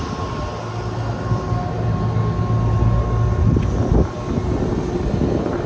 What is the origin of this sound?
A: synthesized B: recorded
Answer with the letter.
B